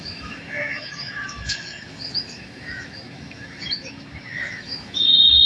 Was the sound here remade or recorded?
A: remade